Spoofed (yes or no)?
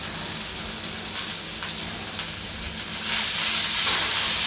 no